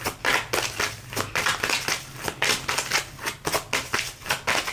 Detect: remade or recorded recorded